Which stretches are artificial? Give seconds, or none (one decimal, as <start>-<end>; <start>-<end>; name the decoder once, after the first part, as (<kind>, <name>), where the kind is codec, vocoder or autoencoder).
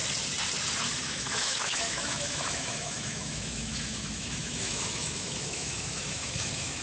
1.0-6.8 (autoencoder, DAC-VAE)